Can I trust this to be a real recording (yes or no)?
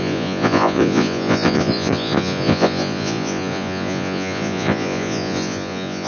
no